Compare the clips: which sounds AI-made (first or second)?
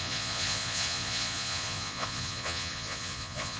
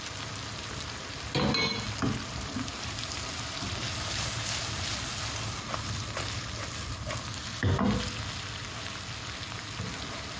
first